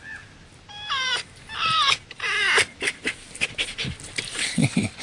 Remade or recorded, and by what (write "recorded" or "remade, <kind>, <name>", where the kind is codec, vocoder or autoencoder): remade, vocoder, BigVGAN v2